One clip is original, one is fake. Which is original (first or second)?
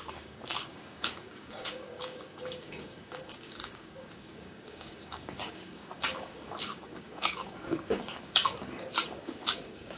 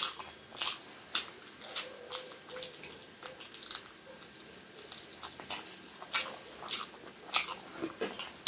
second